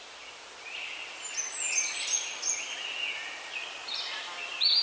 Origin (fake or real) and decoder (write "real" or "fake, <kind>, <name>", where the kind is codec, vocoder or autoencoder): real